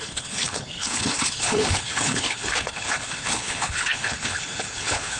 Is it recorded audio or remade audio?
remade